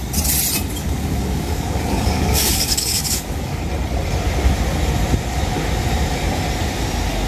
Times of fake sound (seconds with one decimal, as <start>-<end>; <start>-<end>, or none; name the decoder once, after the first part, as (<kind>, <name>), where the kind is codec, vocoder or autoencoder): 0.8-3.6 (codec, DAC)